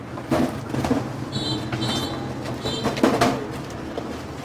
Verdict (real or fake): real